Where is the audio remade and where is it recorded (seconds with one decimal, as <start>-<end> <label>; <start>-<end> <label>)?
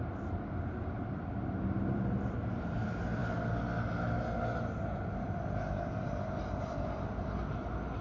0.0-8.0 recorded